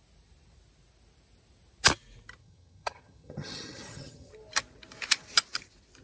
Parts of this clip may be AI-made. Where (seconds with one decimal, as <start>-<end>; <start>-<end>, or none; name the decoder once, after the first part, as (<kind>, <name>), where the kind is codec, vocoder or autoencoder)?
2.4-4.3 (vocoder, HiFi-GAN)